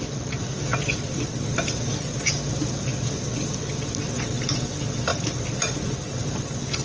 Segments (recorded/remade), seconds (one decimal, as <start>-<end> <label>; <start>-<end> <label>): 0.0-6.8 recorded